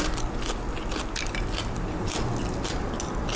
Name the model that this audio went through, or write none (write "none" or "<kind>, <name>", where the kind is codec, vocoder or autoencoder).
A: none